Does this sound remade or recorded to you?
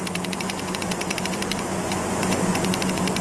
remade